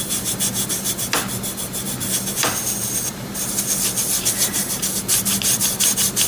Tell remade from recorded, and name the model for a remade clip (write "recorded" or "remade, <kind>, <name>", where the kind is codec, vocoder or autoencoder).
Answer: recorded